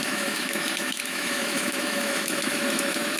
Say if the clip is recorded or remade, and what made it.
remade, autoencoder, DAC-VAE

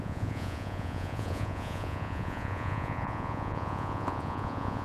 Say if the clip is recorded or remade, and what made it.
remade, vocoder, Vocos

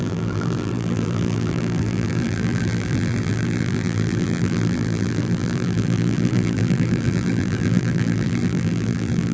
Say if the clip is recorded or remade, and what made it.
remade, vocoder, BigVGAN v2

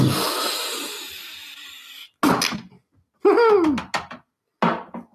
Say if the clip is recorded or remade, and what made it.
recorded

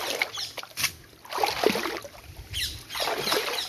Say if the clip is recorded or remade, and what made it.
recorded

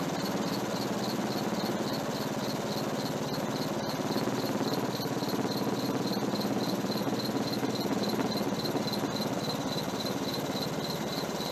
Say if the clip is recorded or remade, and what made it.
recorded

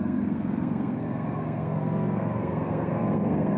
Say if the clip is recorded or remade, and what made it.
remade, codec, SNAC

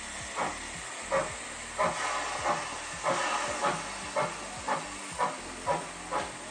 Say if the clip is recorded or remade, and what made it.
recorded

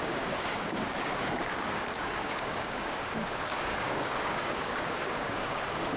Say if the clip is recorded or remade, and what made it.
remade, codec, DAC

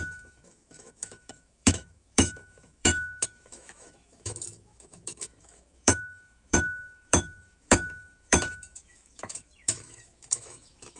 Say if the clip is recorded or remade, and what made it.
remade, autoencoder, DAC-VAE